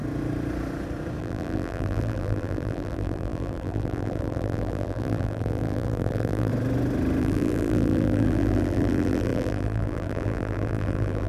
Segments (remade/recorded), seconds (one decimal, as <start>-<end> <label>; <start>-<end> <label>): 0.0-1.2 recorded; 1.2-6.5 remade; 6.5-7.2 recorded; 7.2-11.3 remade